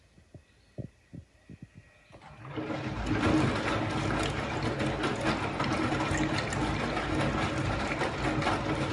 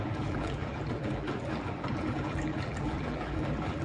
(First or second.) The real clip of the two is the first